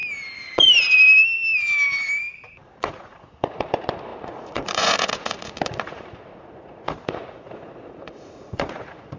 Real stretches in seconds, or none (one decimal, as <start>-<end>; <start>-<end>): 0.0-2.5